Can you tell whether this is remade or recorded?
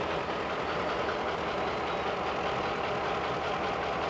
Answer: recorded